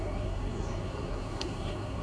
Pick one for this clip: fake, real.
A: fake